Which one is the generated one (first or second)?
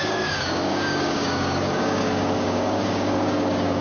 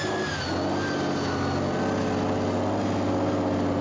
first